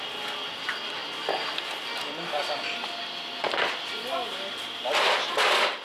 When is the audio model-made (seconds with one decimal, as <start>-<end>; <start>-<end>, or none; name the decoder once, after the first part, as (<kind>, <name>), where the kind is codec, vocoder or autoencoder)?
none